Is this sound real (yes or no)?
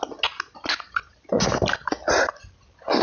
yes